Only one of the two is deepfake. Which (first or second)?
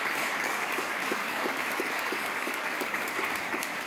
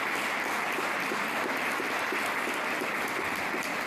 first